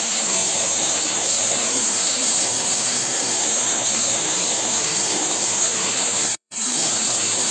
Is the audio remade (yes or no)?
yes